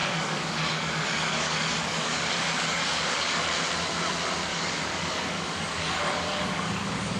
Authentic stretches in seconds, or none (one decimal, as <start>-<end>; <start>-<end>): 3.4-4.5